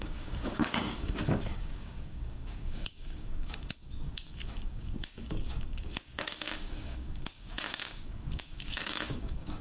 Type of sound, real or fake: fake